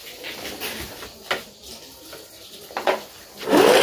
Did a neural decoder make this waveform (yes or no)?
no